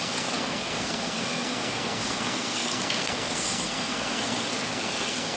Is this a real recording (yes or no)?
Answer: no